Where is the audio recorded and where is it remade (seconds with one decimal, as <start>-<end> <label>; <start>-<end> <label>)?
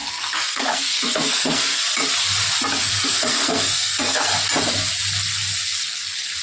0.0-1.8 remade; 1.8-2.8 recorded; 2.8-4.3 remade; 4.3-6.4 recorded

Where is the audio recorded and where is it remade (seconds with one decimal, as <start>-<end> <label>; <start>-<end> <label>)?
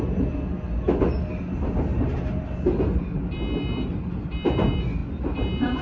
0.0-5.8 recorded